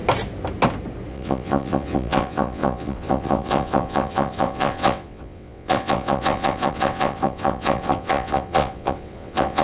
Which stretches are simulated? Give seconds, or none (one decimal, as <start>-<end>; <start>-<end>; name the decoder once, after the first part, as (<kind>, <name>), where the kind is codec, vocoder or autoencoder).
1.1-9.6 (vocoder, WaveNeXt)